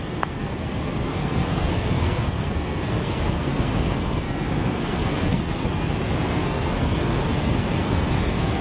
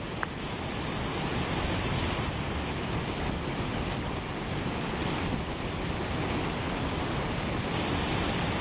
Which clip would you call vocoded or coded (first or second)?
first